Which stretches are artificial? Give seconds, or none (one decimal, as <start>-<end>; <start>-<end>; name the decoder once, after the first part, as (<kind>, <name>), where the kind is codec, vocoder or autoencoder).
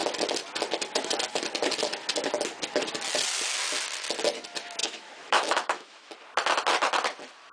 4.8-6.1 (autoencoder, DAC-VAE)